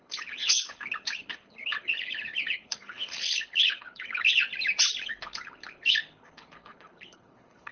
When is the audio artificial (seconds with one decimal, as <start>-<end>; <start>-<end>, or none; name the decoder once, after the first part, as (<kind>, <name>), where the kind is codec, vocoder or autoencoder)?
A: 0.0-4.4 (codec, HILCodec); 5.0-7.7

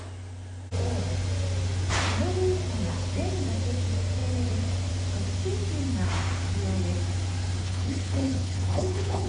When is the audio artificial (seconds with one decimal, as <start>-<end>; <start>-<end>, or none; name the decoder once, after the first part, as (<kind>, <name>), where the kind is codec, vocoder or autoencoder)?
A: 7.6-9.3 (codec, HILCodec)

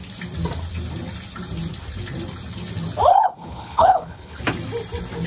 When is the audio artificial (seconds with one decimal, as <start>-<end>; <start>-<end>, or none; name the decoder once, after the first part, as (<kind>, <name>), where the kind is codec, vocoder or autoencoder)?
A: 3.1-4.4 (codec, HILCodec)

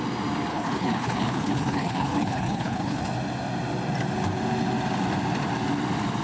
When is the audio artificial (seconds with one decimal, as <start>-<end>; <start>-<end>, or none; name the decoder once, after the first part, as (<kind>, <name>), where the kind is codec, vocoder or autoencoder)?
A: 0.5-3.0 (codec, HILCodec)